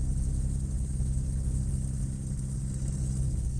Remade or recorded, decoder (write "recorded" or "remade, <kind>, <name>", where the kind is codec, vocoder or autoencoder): recorded